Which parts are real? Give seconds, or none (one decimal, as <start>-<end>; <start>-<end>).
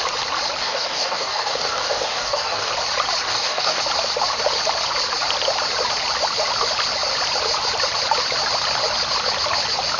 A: 0.0-0.6; 2.7-3.3; 3.8-10.0